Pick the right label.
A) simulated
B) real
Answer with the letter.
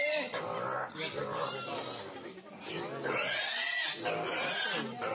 B